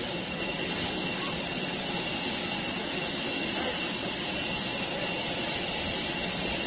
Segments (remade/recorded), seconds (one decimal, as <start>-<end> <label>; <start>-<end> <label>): 0.0-2.8 recorded; 2.8-3.4 remade; 3.4-6.7 recorded